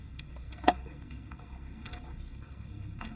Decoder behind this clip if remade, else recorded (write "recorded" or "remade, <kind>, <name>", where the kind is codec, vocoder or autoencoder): remade, codec, SNAC